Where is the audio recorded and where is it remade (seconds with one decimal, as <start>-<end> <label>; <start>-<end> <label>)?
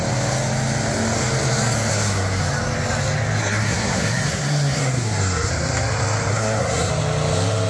0.0-1.9 recorded; 1.9-2.4 remade; 2.4-3.4 recorded; 3.4-5.5 remade; 5.5-6.3 recorded; 6.3-6.9 remade; 6.9-7.7 recorded